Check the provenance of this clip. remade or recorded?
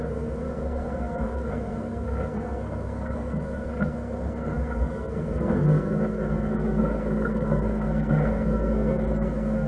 remade